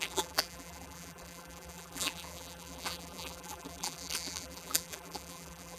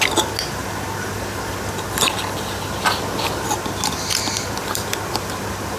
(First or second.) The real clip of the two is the second